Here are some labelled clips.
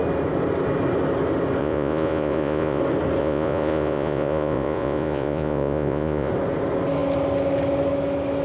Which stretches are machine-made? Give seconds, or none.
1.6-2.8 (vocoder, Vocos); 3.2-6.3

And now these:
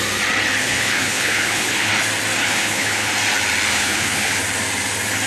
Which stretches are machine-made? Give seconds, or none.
0.6-1.9 (codec, HILCodec); 2.4-3.1; 3.7-4.4